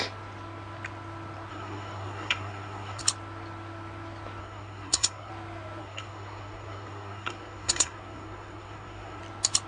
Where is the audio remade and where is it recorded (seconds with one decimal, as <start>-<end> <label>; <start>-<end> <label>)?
0.0-1.5 recorded; 1.5-3.0 remade; 3.0-4.4 recorded; 4.4-5.3 remade; 5.3-5.8 recorded; 5.8-9.2 remade; 9.2-9.7 recorded